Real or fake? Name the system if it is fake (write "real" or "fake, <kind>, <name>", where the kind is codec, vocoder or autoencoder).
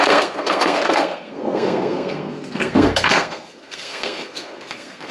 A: fake, codec, SNAC